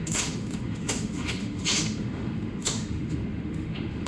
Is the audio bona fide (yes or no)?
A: no